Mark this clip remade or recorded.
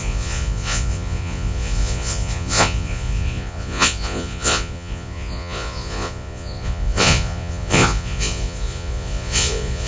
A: remade